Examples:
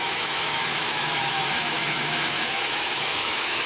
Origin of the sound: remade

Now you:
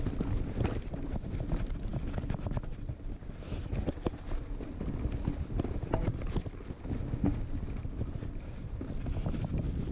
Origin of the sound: recorded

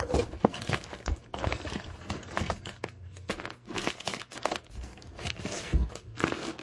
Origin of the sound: remade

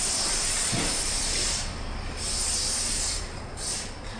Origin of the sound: remade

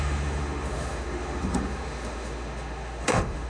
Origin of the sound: remade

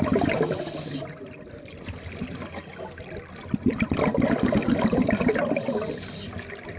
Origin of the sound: recorded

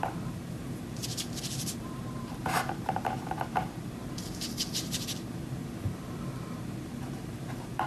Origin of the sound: remade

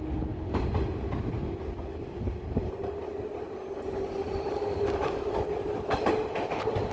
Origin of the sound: recorded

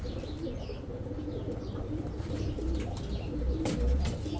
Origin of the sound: recorded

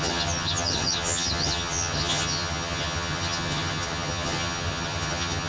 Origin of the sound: remade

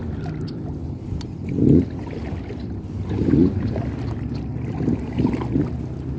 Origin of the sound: remade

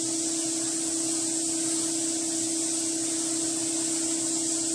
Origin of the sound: recorded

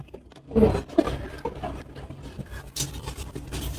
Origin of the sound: recorded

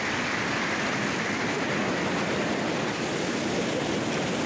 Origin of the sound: recorded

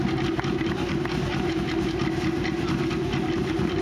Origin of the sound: recorded